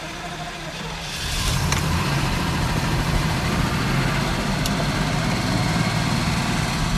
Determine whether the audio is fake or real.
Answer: fake